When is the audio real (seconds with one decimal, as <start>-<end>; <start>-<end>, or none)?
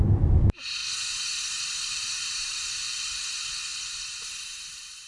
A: 0.0-5.1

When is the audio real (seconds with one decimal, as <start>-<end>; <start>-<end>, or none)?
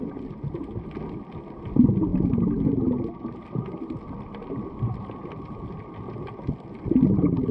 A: 0.0-7.5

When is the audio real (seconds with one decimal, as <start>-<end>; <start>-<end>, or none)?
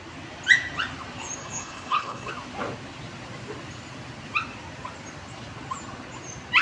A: 0.0-1.4; 2.3-6.6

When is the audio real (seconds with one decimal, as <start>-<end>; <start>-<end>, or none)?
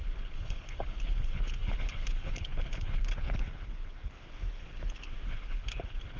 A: none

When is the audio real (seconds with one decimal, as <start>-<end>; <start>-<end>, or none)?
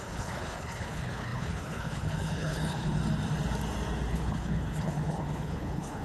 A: 3.0-4.1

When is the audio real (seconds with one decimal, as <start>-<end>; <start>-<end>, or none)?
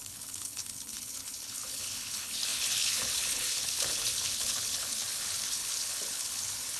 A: none